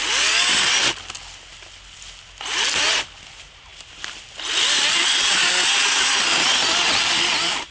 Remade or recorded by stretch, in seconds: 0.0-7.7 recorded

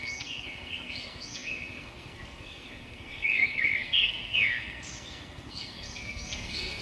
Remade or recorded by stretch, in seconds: 0.0-6.8 remade

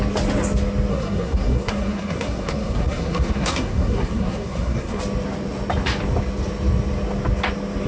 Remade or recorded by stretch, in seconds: 0.0-0.9 recorded; 0.9-5.0 remade; 5.0-7.9 recorded

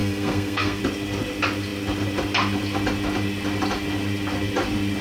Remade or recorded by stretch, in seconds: 0.0-0.8 remade; 0.8-5.0 recorded

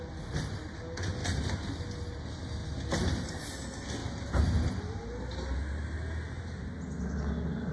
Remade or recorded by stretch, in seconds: 0.0-7.7 recorded

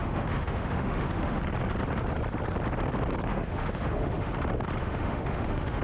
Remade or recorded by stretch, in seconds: 0.0-1.4 remade; 1.4-3.3 recorded; 3.3-4.3 remade; 4.3-4.8 recorded; 4.8-5.8 remade